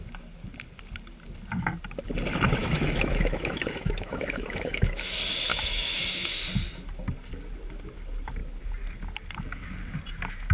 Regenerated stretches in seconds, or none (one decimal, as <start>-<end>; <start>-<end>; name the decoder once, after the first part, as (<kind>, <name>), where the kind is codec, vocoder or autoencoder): 2.6-5.1 (autoencoder, DAC-VAE); 5.5-6.4